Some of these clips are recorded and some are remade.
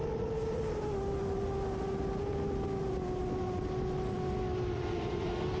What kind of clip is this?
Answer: recorded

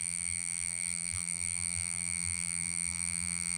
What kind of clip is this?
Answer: remade